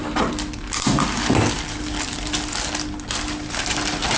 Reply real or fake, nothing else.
real